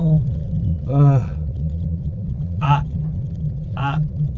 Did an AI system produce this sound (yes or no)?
yes